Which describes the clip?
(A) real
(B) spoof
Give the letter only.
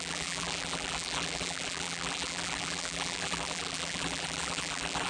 B